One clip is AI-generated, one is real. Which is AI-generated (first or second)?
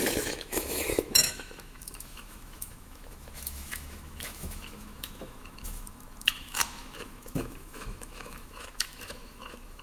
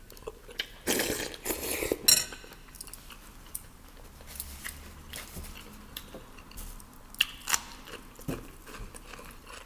first